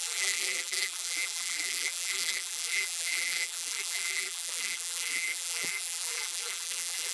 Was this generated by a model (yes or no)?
yes